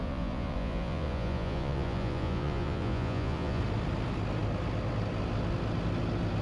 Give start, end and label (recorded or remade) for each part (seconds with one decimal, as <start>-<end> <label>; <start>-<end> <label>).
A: 0.0-3.6 remade; 3.6-6.4 recorded